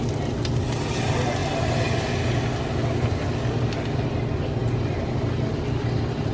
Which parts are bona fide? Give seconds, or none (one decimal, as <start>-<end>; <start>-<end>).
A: 0.0-4.6